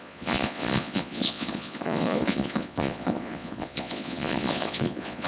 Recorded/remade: remade